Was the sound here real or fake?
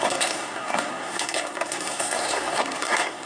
fake